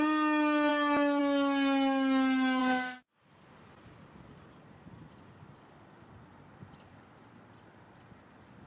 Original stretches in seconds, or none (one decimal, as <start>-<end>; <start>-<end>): 0.0-2.6; 3.2-8.7